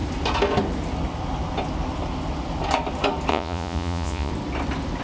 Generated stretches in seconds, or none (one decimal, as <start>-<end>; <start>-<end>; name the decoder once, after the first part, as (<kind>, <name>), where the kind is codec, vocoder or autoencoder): 3.3-4.3 (vocoder, Vocos)